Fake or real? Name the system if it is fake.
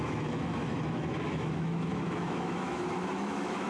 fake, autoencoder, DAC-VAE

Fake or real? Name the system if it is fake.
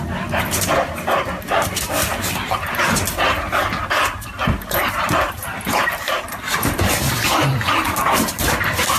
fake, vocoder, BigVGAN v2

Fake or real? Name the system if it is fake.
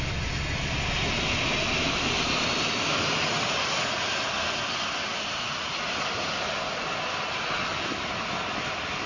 real